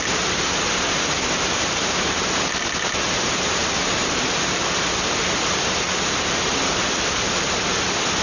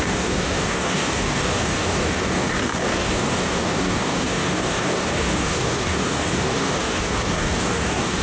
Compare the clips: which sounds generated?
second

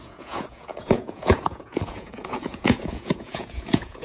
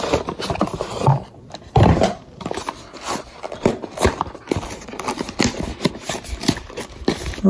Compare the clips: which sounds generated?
first